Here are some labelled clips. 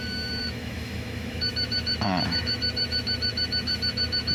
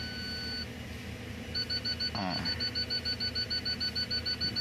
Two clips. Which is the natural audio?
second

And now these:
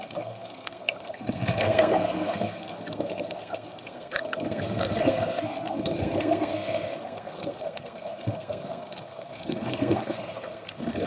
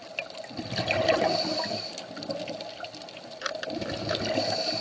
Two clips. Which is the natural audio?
second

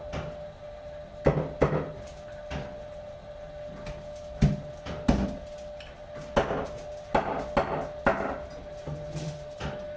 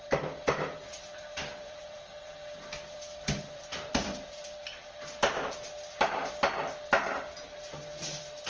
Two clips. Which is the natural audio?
first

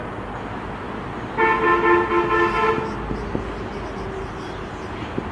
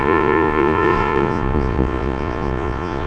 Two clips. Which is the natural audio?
first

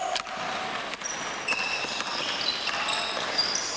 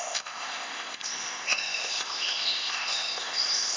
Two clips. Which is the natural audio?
first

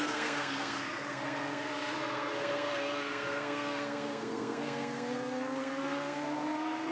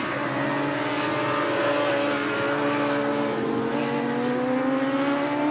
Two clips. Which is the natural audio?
second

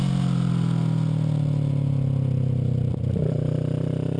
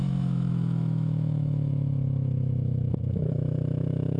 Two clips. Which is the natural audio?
first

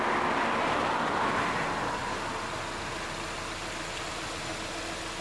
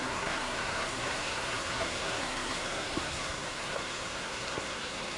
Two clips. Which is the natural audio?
first